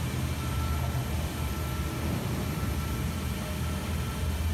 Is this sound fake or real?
real